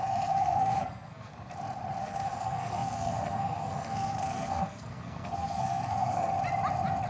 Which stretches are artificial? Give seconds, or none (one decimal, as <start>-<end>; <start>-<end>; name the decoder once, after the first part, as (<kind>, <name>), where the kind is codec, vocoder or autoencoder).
0.0-1.3 (codec, SNAC); 2.0-6.3